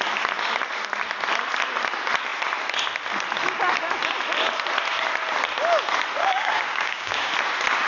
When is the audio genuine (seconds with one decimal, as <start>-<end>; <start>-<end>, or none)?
0.0-6.2; 7.3-7.9